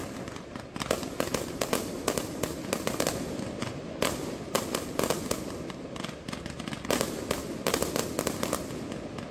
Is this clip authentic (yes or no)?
yes